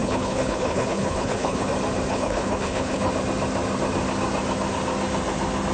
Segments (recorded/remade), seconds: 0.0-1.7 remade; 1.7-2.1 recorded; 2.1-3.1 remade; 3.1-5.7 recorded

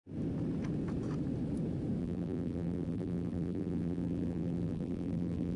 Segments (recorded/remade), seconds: 0.0-2.0 recorded; 2.0-5.6 remade

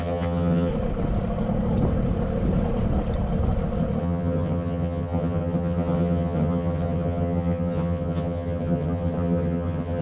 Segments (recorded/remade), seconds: 0.0-0.7 remade; 0.7-4.0 recorded; 4.0-10.0 remade

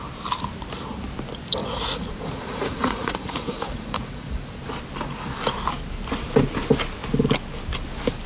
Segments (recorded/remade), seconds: 0.0-1.6 recorded; 1.6-4.6 remade; 4.6-8.3 recorded

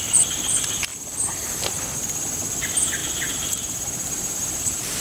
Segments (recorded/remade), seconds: 0.0-0.9 recorded; 0.9-1.5 remade; 1.5-3.0 recorded; 3.0-5.0 remade